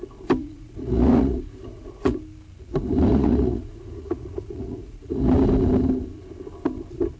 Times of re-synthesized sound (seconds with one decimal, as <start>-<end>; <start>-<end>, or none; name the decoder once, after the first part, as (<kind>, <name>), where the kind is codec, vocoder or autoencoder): 0.4-2.2 (vocoder, Vocos); 3.1-5.3